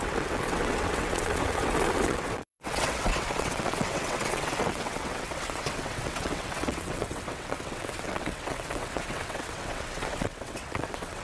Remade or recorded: remade